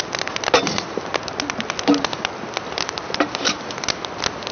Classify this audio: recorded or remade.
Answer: recorded